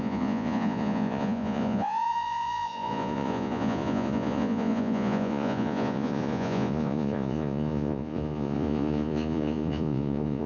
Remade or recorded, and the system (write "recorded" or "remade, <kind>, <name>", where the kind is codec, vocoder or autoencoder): remade, vocoder, Vocos